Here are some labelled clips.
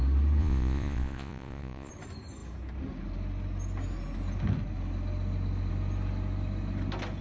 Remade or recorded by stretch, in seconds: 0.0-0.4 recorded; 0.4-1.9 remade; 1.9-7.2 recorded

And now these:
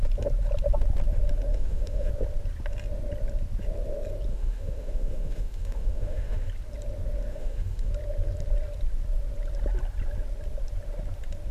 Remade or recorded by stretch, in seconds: 0.0-1.5 recorded; 1.5-2.1 remade; 2.1-4.3 recorded; 4.3-6.5 remade; 6.5-7.3 recorded; 7.3-7.9 remade; 7.9-11.5 recorded